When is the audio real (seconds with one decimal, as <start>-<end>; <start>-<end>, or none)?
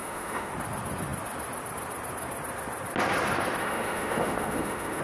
0.5-3.6